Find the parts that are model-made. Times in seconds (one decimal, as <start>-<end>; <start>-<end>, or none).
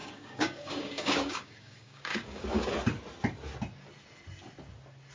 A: 0.0-2.7